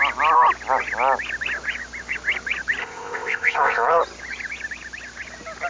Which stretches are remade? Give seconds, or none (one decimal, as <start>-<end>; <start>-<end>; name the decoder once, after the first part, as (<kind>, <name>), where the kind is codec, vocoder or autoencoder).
2.8-4.0 (codec, ZipCodec)